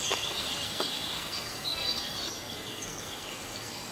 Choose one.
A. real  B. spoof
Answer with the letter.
B